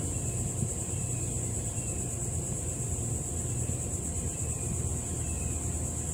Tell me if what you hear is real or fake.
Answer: fake